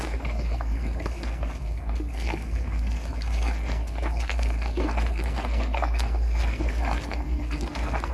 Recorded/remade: remade